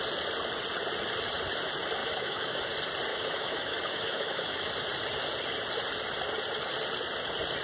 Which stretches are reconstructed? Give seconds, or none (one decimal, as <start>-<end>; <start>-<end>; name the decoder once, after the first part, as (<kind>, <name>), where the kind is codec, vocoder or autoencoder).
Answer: 2.0-2.7 (autoencoder, DAC-VAE); 3.1-4.7